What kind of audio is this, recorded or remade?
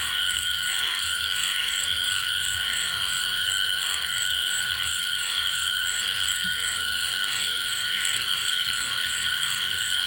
remade